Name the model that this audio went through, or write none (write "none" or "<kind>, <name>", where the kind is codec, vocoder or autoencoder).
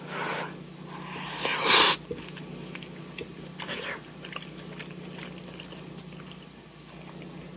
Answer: none